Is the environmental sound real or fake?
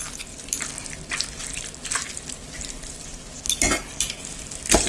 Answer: real